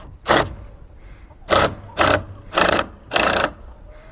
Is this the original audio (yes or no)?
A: yes